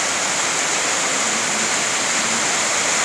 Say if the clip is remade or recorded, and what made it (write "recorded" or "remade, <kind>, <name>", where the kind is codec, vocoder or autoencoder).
recorded